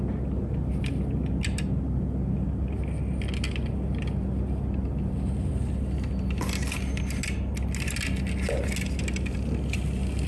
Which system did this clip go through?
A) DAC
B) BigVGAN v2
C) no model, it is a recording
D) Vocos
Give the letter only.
C